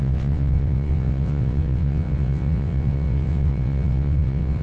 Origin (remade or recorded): remade